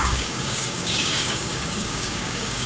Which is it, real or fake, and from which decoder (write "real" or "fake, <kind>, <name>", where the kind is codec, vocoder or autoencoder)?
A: fake, codec, DAC